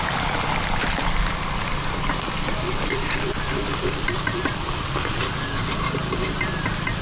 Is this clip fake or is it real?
real